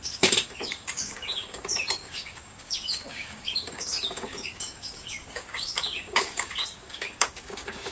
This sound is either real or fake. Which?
fake